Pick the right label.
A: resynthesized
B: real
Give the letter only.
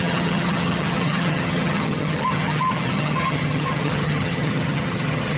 A